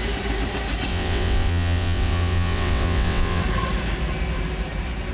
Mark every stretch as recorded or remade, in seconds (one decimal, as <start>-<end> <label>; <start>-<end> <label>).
0.0-0.9 recorded; 0.9-3.4 remade; 3.4-5.1 recorded